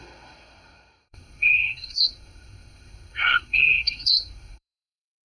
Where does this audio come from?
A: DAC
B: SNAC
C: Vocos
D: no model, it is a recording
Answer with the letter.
B